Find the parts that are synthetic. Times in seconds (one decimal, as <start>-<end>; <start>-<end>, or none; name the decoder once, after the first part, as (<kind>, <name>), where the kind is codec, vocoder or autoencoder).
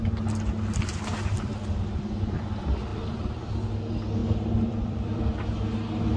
2.9-3.8 (vocoder, BigVGAN v2); 4.2-5.2